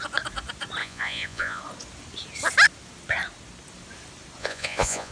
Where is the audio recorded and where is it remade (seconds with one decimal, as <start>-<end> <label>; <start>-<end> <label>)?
0.0-0.8 recorded; 0.8-1.6 remade; 1.6-4.4 recorded; 4.4-5.1 remade